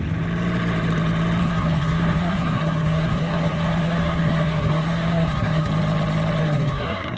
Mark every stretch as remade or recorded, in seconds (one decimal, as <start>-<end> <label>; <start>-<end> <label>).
0.0-1.4 recorded; 1.4-5.7 remade; 5.7-6.4 recorded; 6.4-7.2 remade